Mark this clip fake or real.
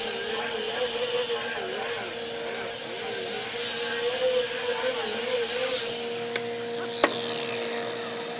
real